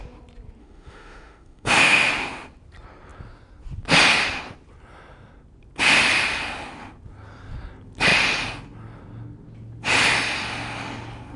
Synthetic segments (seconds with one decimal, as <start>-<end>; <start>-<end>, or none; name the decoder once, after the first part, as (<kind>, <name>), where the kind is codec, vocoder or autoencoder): 0.6-2.1 (autoencoder, DAC-VAE)

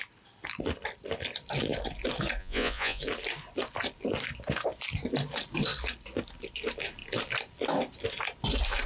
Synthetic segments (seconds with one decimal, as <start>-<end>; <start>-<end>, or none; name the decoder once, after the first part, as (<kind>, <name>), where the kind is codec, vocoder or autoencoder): 2.4-3.0 (vocoder, Vocos)

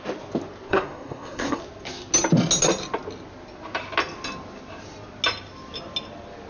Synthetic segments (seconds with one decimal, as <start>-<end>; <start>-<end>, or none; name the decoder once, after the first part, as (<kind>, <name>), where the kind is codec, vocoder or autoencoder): 0.7-1.6 (codec, SNAC)

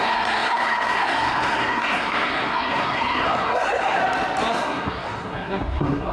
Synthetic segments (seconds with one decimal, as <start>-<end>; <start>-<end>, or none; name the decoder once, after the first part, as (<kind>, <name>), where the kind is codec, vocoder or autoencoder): 0.0-4.0 (codec, SNAC); 4.5-6.1

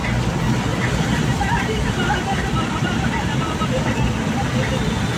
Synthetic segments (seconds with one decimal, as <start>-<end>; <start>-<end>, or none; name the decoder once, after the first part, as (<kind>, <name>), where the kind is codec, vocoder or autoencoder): 0.7-3.8 (vocoder, BigVGAN v2)

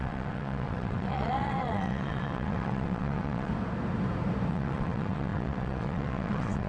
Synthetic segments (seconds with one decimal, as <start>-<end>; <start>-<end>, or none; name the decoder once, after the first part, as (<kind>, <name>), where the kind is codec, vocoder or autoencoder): 0.0-3.5 (vocoder, WaveNeXt); 4.5-6.7

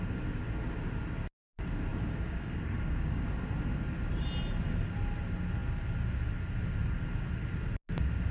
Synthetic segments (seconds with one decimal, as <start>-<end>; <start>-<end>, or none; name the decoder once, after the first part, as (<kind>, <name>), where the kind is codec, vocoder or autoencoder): 1.9-3.2 (codec, DAC)

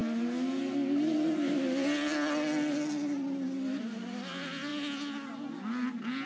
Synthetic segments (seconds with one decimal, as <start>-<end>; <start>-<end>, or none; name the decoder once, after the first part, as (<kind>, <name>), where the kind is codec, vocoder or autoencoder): none